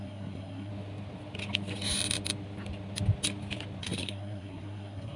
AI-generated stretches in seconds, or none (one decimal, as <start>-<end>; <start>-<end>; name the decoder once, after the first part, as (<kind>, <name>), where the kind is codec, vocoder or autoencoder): 0.0-0.7 (codec, SNAC); 3.8-5.2